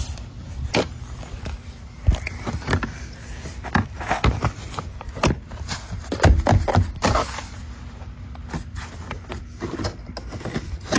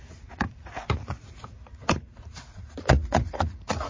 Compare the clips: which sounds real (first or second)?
first